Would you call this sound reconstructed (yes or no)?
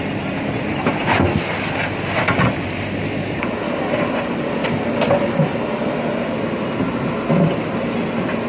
no